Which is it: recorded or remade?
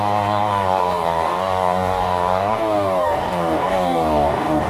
remade